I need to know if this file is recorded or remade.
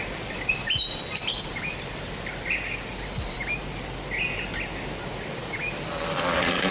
recorded